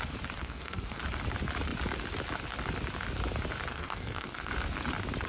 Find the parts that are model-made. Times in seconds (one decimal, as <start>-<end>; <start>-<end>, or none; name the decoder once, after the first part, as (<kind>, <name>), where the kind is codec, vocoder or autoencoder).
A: 0.4-1.0 (codec, SNAC); 3.7-4.5